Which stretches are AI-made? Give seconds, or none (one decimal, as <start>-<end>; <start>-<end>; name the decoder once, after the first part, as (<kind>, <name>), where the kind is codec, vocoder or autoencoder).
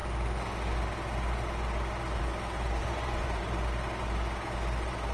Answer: 2.8-3.4 (vocoder, Vocos)